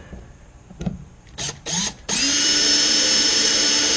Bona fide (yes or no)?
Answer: no